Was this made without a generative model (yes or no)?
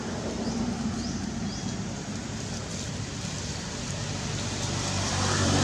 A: no